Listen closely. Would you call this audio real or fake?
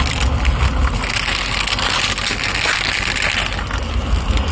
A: real